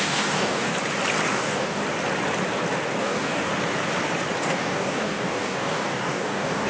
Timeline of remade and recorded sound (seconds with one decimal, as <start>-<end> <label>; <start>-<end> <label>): 0.0-0.7 remade; 0.7-1.3 recorded; 1.3-1.8 remade; 1.8-3.0 recorded; 3.0-3.5 remade; 3.5-4.4 recorded; 4.4-6.7 remade